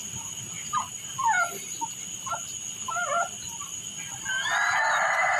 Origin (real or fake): real